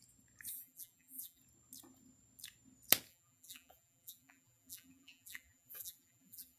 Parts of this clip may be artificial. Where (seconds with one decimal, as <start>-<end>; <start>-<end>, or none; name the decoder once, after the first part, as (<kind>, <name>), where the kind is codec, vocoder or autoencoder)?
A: 0.5-1.4 (vocoder, BigVGAN v2); 3.1-6.6

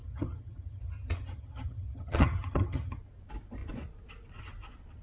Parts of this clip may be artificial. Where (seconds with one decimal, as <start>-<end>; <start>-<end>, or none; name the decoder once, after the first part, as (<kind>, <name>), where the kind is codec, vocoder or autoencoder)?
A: 0.0-3.0 (vocoder, HiFi-GAN)

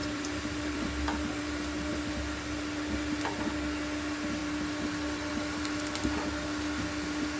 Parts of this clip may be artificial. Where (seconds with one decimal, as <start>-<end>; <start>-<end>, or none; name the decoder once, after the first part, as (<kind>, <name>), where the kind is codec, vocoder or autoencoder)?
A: 0.0-1.4 (vocoder, BigVGAN v2); 1.9-3.2

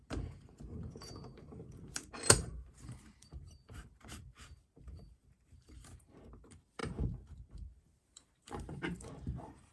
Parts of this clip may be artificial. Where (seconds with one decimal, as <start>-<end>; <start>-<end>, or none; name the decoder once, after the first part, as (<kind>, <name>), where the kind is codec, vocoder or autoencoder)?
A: 0.0-9.7 (vocoder, BigVGAN v2)

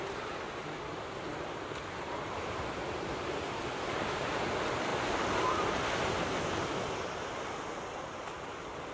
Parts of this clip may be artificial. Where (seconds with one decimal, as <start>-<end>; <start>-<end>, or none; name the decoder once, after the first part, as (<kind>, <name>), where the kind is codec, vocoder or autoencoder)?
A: none

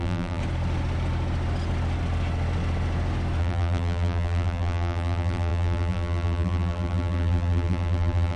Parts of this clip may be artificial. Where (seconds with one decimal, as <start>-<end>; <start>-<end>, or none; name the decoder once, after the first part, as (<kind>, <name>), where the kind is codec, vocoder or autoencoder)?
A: 0.0-0.4 (vocoder, BigVGAN v2); 3.4-8.4

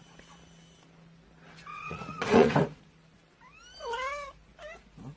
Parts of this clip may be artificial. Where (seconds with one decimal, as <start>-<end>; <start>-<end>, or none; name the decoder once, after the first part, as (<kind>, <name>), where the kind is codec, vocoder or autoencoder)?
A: 1.7-2.8 (vocoder, Vocos)